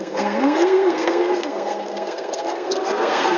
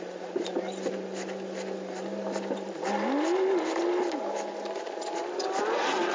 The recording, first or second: second